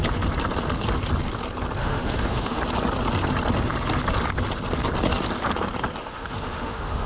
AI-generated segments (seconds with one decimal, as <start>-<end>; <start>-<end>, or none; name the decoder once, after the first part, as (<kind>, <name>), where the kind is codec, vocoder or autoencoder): 1.8-2.6 (autoencoder, DAC-VAE); 6.0-7.1